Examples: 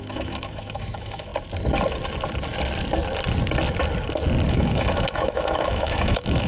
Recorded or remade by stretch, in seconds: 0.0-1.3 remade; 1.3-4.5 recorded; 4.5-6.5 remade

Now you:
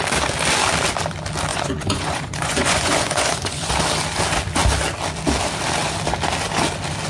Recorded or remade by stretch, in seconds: 0.0-1.5 recorded; 1.5-3.7 remade; 3.7-7.1 recorded

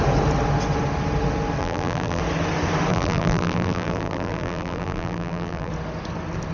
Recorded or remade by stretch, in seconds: 0.0-1.6 recorded; 1.6-2.2 remade; 2.2-2.9 recorded; 2.9-5.7 remade; 5.7-6.5 recorded

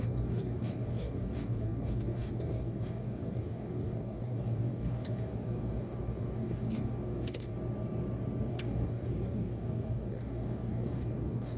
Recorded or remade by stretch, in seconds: 0.0-7.5 remade; 7.5-8.5 recorded; 8.5-11.6 remade

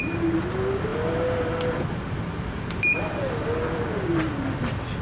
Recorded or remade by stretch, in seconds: 0.0-5.0 recorded

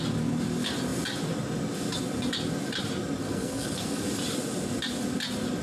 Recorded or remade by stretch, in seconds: 0.0-3.2 recorded; 3.2-4.0 remade; 4.0-5.6 recorded

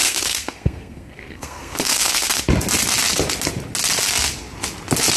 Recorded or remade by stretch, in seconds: 0.0-2.4 remade; 2.4-5.2 recorded

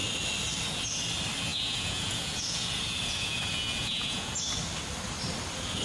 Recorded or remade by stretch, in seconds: 0.0-1.5 recorded; 1.5-4.4 remade; 4.4-5.8 recorded